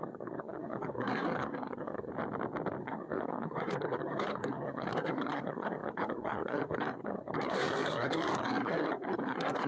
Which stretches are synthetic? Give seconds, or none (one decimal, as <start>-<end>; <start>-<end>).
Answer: 0.0-2.1; 2.8-9.7